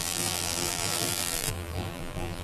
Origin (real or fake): fake